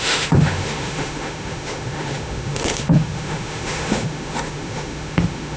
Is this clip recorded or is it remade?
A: remade